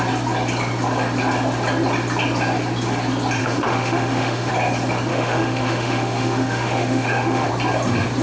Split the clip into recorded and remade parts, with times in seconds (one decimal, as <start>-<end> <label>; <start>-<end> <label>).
0.0-3.4 recorded; 3.4-4.5 remade; 4.5-5.1 recorded; 5.1-7.5 remade; 7.5-8.2 recorded